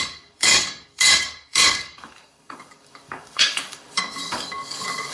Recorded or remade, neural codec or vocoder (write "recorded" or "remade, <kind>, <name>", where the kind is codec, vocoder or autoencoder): remade, codec, DAC